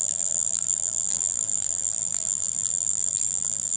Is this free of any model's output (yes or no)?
no